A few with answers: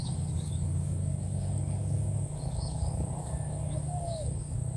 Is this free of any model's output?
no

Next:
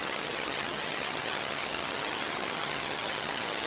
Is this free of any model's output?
no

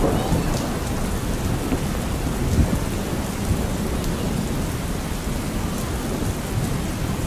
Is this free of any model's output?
yes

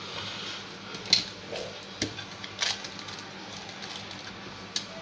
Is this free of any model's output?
yes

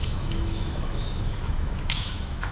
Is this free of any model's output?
no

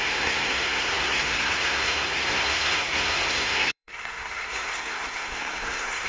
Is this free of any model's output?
no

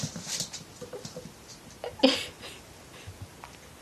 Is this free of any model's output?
yes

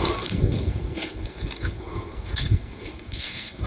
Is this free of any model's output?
no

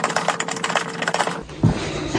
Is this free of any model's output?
yes